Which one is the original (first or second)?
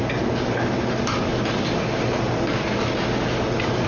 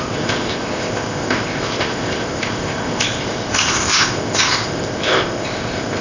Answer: first